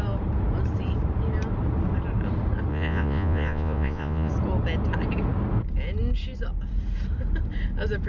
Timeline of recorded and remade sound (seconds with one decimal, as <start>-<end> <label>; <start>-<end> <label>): 0.0-2.7 recorded; 2.7-4.3 remade; 4.3-8.1 recorded